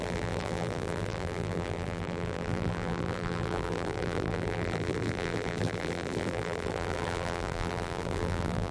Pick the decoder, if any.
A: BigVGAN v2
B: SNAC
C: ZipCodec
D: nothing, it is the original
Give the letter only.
A